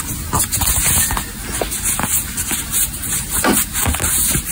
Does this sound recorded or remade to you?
recorded